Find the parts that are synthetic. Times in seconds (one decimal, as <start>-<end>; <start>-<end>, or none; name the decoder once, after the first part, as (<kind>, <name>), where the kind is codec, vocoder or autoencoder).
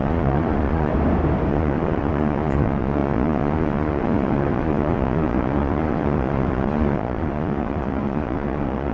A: 0.0-0.9 (vocoder, Vocos); 1.5-8.9